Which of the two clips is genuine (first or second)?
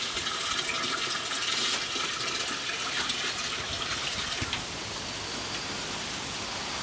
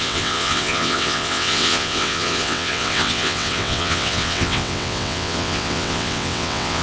first